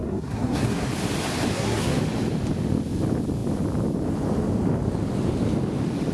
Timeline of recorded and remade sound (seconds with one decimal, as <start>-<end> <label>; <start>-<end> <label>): 0.0-0.9 remade; 0.9-1.5 recorded; 1.5-2.0 remade; 2.0-6.1 recorded